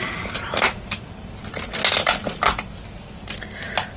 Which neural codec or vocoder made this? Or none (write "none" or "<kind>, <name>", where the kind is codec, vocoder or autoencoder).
none